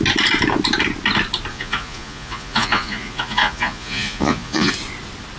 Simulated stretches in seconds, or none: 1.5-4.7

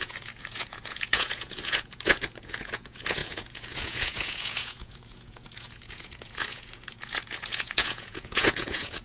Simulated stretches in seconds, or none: 0.0-9.0

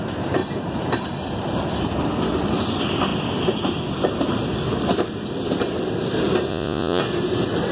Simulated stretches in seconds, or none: 6.5-7.0

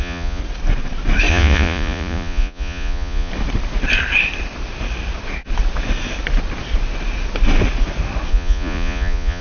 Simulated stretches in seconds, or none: 0.0-0.4; 1.3-3.3; 8.3-9.4

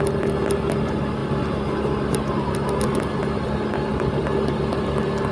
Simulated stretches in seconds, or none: none